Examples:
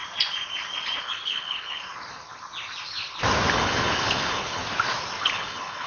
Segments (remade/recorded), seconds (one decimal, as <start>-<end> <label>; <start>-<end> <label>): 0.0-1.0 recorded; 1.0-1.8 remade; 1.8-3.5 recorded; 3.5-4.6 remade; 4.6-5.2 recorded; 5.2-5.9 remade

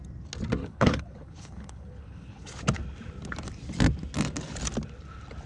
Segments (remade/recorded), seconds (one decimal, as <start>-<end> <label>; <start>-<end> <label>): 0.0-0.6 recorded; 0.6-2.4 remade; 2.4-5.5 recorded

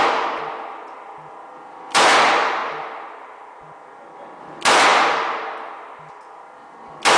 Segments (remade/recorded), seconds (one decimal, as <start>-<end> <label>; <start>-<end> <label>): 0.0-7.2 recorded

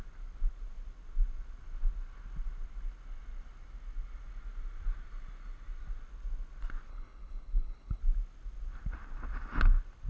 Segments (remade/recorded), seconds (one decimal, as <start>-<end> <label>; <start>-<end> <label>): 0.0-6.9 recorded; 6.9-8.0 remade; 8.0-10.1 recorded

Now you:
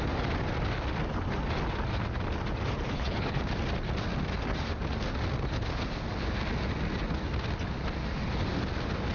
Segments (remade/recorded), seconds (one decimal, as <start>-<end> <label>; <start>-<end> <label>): 0.0-2.9 recorded; 2.9-3.4 remade; 3.4-9.1 recorded

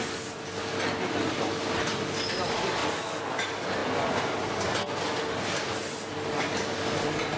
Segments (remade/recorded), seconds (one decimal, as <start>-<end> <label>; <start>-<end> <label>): 0.0-7.4 recorded